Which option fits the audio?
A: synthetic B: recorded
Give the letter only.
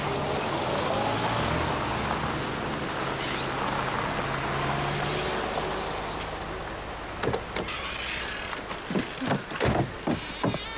B